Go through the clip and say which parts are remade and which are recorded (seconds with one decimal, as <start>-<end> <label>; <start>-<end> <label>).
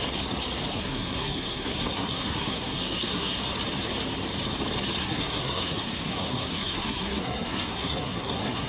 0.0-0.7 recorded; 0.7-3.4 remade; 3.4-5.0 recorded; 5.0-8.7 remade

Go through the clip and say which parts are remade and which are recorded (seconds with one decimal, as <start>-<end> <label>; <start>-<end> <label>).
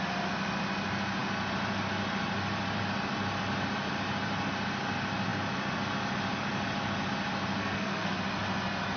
0.0-7.6 recorded; 7.6-8.2 remade; 8.2-9.0 recorded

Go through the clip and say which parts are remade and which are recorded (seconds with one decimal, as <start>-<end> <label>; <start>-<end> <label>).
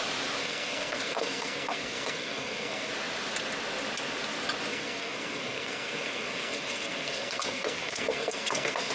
0.0-0.4 recorded; 0.4-2.9 remade; 2.9-4.7 recorded; 4.7-8.9 remade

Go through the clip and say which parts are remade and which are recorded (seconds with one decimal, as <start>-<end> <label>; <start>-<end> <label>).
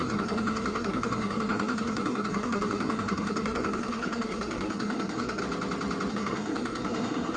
0.0-5.4 remade; 5.4-6.1 recorded; 6.1-7.4 remade